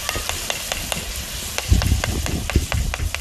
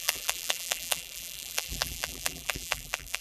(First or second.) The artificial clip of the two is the second